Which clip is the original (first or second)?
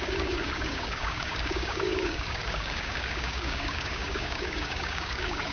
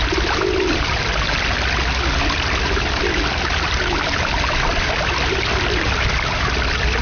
second